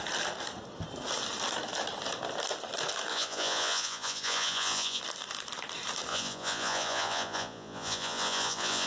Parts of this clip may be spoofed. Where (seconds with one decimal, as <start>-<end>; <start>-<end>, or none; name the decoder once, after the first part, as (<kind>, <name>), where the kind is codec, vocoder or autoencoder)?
3.1-5.0 (vocoder, Vocos); 6.1-8.9